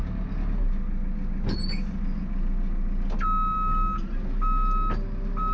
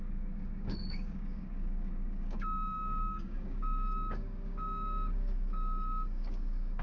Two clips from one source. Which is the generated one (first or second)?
second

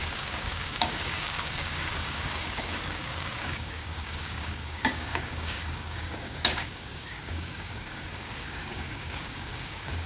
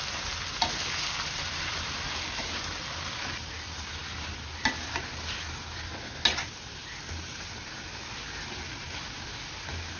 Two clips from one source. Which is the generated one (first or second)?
first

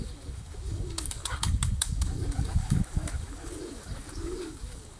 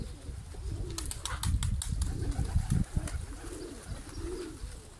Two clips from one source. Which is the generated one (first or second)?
first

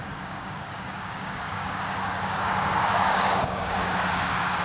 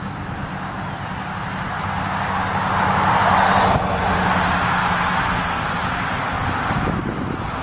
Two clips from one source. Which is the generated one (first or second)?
first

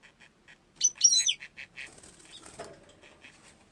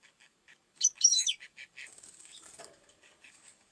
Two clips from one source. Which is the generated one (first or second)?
second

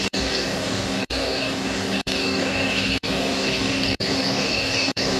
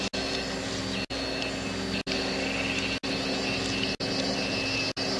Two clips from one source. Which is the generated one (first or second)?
first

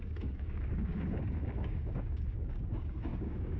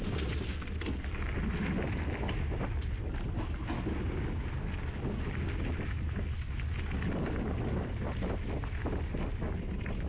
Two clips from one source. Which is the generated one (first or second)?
first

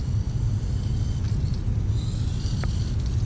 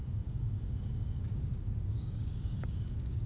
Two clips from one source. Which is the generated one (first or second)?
second